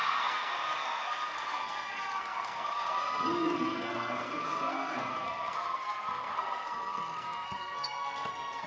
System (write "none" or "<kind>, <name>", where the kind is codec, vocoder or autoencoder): codec, SNAC